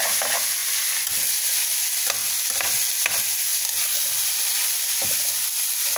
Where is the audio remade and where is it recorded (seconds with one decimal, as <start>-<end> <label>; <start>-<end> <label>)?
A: 0.0-2.2 recorded; 2.2-2.7 remade; 2.7-3.5 recorded; 3.5-5.1 remade; 5.1-6.0 recorded